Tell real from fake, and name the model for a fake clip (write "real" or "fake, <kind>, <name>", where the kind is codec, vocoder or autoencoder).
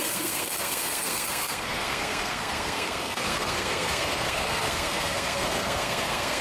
fake, codec, SNAC